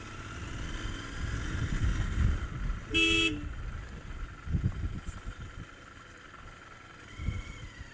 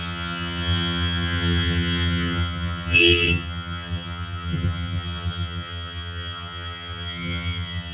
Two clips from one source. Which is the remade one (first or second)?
second